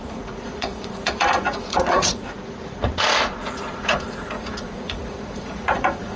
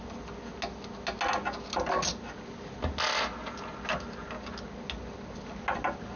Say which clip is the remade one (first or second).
first